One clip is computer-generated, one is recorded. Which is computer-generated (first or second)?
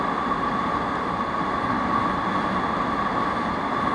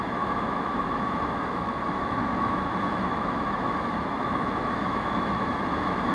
second